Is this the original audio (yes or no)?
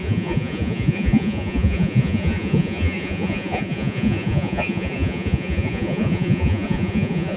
no